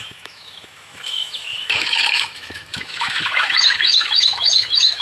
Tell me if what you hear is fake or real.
fake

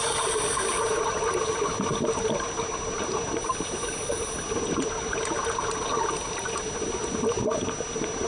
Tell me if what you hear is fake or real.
real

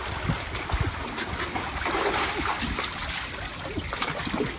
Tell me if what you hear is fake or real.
real